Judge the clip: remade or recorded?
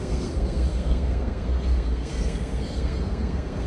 remade